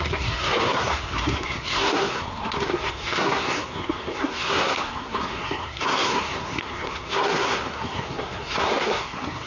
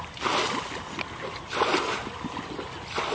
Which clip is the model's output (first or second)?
first